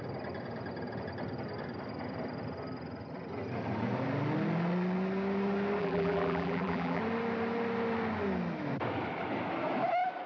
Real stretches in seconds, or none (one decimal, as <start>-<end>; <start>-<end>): 0.0-5.8; 7.0-10.3